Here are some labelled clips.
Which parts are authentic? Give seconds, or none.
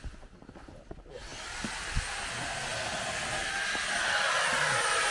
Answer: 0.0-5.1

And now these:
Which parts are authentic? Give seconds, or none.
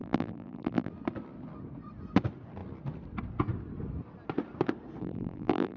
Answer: 0.9-5.0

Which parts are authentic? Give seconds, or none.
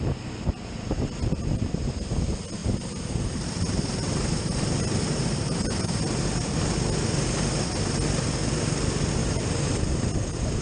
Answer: 0.0-2.6; 6.0-9.2; 10.1-10.6